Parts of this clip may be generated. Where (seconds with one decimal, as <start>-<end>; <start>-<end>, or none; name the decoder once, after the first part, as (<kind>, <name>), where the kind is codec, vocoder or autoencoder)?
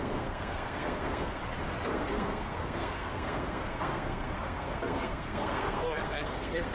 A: 0.0-1.4 (codec, SNAC); 1.9-6.7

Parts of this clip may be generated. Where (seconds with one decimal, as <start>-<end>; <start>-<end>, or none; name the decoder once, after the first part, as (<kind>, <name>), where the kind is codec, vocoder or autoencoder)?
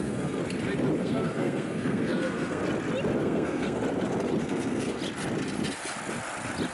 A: 0.0-0.4 (codec, SNAC); 1.0-2.6; 3.2-3.8; 4.4-5.0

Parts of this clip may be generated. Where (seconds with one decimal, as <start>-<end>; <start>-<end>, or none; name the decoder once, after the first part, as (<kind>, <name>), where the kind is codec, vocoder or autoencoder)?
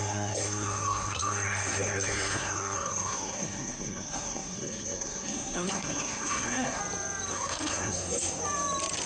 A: 0.0-6.8 (codec, SNAC); 7.3-8.4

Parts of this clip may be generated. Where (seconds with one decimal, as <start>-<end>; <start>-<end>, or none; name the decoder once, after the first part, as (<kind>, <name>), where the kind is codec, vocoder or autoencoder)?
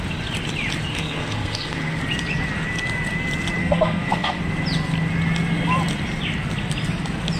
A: 0.9-2.0 (codec, SNAC); 3.6-4.4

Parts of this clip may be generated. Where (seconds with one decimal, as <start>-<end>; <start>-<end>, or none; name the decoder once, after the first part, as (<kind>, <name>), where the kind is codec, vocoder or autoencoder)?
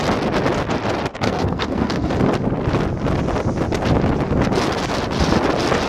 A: 1.1-2.1 (codec, SNAC)